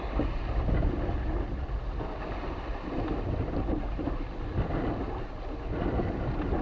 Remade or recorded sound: recorded